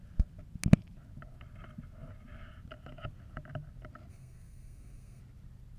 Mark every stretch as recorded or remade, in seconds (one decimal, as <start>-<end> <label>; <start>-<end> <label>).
0.0-4.1 recorded; 4.1-5.2 remade; 5.2-5.8 recorded